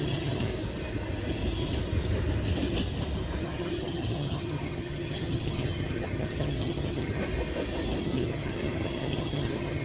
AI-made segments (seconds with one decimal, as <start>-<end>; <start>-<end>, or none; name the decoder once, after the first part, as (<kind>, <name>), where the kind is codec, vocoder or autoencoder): 0.0-0.5 (vocoder, HiFi-GAN); 3.4-7.2; 8.0-9.8